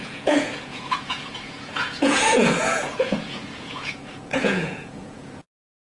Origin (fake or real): fake